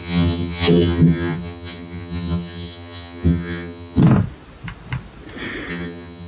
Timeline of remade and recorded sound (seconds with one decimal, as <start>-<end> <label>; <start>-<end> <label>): 0.0-4.0 remade; 4.0-5.7 recorded; 5.7-6.3 remade

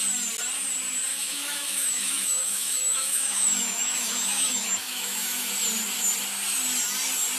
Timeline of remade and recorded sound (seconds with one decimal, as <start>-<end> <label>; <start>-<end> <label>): 0.0-1.1 recorded; 1.1-5.5 remade; 5.5-7.4 recorded